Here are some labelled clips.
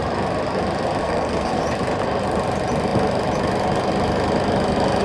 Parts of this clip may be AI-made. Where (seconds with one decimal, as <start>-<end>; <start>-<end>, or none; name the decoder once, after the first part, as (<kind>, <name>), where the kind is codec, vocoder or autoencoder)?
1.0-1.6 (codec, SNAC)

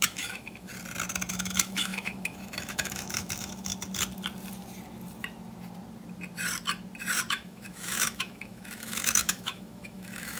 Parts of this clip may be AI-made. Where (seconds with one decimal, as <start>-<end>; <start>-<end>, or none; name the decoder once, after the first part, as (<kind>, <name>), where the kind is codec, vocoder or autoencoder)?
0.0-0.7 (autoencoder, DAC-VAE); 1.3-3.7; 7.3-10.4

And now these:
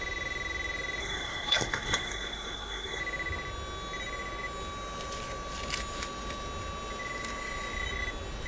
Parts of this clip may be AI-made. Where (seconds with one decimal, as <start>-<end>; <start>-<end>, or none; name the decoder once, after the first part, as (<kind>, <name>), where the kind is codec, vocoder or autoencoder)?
1.0-3.0 (codec, SNAC)

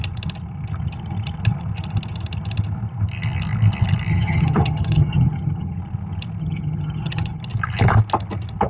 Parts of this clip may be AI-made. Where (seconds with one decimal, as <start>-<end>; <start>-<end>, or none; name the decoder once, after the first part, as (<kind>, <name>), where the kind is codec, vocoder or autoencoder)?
4.1-5.8 (vocoder, HiFi-GAN); 6.4-7.4

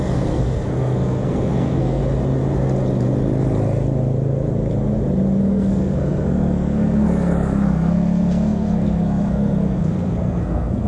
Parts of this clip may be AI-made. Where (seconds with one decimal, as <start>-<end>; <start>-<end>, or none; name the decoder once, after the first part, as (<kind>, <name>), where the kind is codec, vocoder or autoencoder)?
0.0-2.0 (codec, SNAC); 5.4-10.9

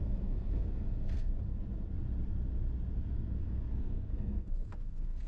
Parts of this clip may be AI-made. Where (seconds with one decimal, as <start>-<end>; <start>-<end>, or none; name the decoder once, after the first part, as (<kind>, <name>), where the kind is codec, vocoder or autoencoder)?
0.0-1.3 (codec, SNAC); 3.0-5.3